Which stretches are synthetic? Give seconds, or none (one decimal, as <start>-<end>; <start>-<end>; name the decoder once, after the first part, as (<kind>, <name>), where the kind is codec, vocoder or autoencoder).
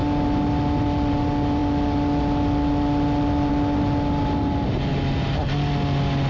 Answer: none